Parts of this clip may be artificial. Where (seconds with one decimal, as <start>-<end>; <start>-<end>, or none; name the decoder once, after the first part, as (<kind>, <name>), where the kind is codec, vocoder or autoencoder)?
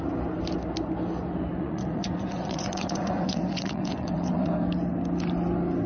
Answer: 1.5-4.5 (vocoder, Vocos)